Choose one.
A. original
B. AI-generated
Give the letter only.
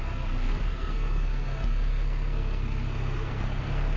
B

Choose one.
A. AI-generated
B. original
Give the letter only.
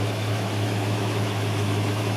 A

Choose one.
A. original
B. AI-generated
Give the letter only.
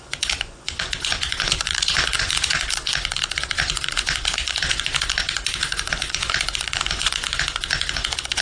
B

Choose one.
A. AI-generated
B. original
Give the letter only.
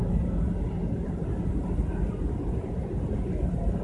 B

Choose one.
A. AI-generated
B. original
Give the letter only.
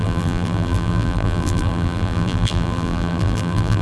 A